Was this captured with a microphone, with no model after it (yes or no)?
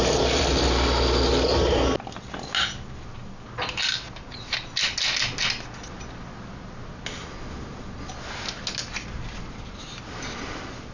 yes